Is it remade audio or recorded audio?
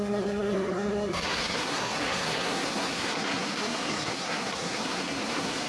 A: remade